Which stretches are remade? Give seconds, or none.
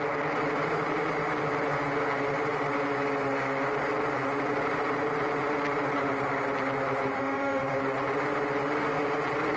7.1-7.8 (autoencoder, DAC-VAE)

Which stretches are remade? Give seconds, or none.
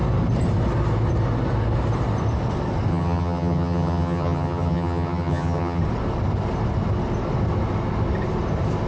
2.9-5.8 (vocoder, HiFi-GAN)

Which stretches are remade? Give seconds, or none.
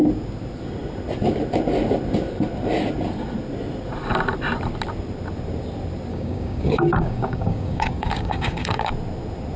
6.1-8.9 (codec, DAC)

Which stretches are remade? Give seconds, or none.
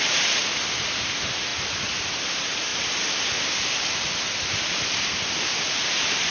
none